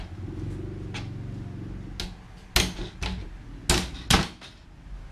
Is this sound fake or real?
real